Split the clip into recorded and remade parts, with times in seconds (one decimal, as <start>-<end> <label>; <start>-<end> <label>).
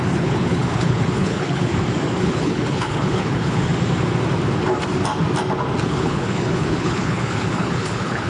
0.0-1.7 remade; 1.7-2.2 recorded; 2.2-3.7 remade; 3.7-5.9 recorded; 5.9-8.3 remade